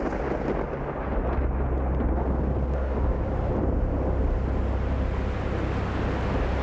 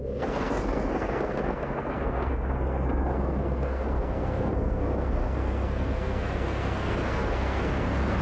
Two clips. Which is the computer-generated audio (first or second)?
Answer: second